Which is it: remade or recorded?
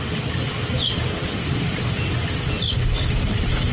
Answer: recorded